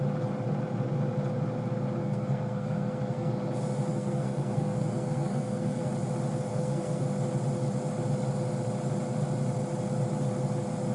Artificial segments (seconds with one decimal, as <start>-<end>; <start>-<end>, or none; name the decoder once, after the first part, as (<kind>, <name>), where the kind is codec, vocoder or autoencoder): 2.0-3.3 (codec, SNAC); 3.9-5.9; 6.5-7.0